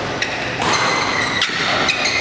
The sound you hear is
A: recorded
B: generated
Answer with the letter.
A